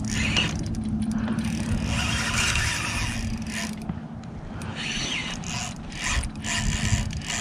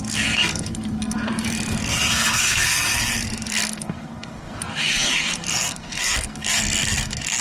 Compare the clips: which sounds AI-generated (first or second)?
second